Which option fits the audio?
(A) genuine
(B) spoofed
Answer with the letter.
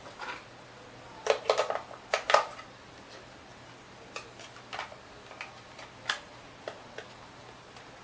A